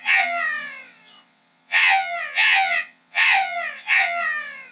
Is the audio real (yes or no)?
no